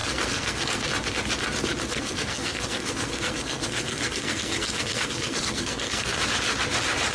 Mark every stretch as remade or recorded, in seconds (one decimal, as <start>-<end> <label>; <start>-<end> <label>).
0.0-0.8 remade; 0.8-1.9 recorded; 1.9-6.2 remade; 6.2-7.1 recorded